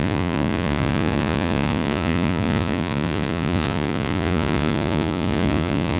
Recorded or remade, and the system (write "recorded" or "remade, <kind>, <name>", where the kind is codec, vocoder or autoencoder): remade, vocoder, Vocos